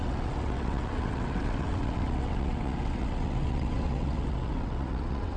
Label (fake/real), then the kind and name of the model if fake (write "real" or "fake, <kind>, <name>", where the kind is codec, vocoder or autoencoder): fake, vocoder, WaveNeXt